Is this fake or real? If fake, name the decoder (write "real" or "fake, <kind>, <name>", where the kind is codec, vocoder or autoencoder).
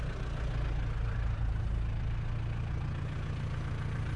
real